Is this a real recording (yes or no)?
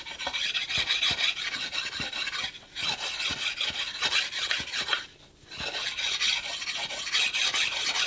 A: yes